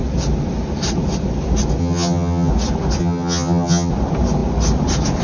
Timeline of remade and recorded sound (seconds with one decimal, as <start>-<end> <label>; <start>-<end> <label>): 0.0-1.8 recorded; 1.8-2.5 remade; 2.5-3.0 recorded; 3.0-3.9 remade; 3.9-5.2 recorded